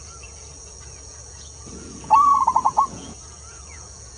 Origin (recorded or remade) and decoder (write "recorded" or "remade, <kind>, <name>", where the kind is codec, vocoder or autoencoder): remade, vocoder, Vocos